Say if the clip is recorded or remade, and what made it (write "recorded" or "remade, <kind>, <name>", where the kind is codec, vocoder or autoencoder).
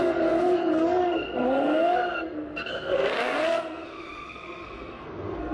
remade, codec, SNAC